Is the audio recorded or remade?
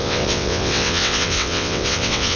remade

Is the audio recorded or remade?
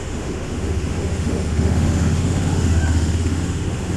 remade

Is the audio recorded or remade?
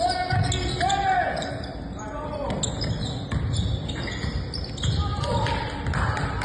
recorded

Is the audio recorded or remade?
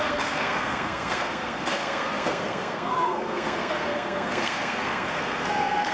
remade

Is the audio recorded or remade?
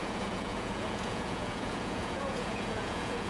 remade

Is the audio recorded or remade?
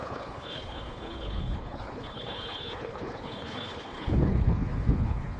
remade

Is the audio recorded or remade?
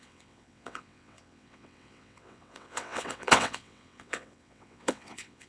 remade